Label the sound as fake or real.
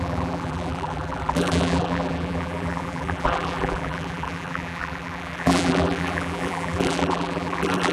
fake